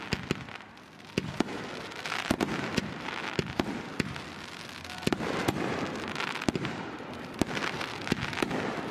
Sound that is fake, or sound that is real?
real